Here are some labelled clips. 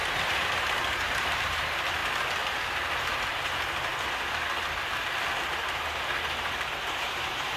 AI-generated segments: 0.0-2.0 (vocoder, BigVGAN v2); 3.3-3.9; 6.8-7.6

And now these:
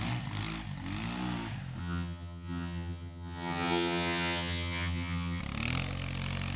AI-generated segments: 1.8-5.4 (vocoder, HiFi-GAN)

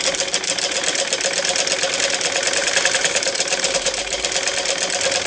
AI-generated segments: 2.6-4.2 (vocoder, BigVGAN v2)

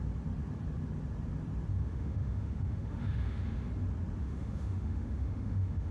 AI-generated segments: 1.7-3.7 (autoencoder, DAC-VAE); 4.2-5.9

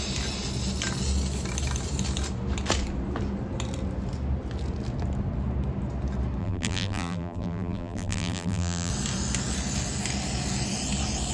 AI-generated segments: 6.4-8.9 (vocoder, BigVGAN v2)

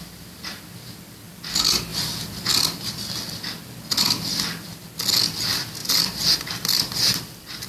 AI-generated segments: 5.8-7.7 (vocoder, BigVGAN v2)

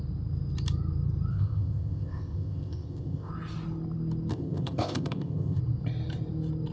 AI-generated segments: 1.3-3.3 (codec, ZipCodec); 4.3-5.6